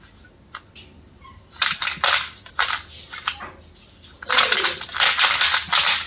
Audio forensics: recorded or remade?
recorded